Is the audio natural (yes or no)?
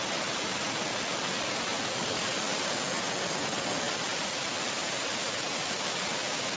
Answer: yes